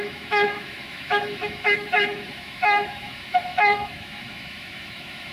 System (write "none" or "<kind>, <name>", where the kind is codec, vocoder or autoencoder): autoencoder, DAC-VAE